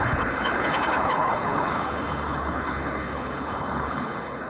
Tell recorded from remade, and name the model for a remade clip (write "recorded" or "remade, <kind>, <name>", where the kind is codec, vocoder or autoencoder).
remade, codec, HILCodec